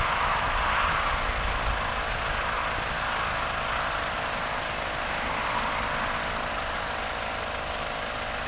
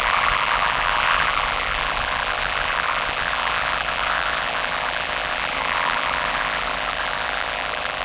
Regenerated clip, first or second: second